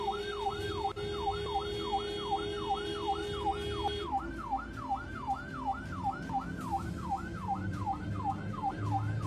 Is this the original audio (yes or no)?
yes